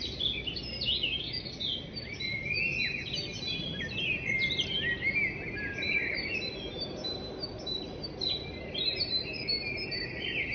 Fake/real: real